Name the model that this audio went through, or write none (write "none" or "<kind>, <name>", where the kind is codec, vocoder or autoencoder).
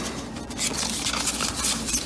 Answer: vocoder, BigVGAN v2